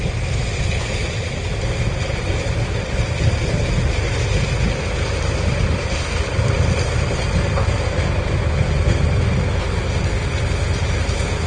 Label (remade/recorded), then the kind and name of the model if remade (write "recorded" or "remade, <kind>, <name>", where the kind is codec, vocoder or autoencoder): recorded